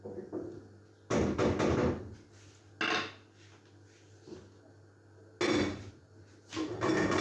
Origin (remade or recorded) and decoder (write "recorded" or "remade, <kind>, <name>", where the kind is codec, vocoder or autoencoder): recorded